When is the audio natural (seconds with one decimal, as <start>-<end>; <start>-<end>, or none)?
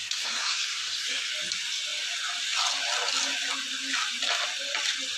1.3-5.2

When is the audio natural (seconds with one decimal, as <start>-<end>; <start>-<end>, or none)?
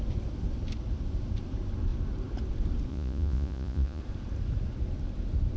0.0-2.9; 4.0-5.6